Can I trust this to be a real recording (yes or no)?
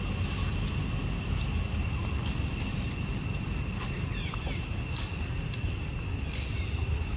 yes